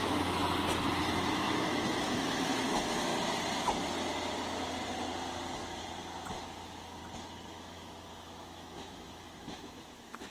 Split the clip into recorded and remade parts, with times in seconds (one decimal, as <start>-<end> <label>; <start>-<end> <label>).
0.0-0.4 remade; 0.4-1.0 recorded; 1.0-3.1 remade; 3.1-6.3 recorded; 6.3-7.0 remade; 7.0-7.5 recorded; 7.5-10.3 remade